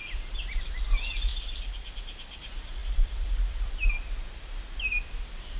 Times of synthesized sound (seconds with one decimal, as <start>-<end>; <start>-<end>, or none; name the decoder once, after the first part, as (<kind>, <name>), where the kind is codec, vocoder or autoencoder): 0.0-0.6 (vocoder, BigVGAN v2); 1.3-2.4; 2.8-3.7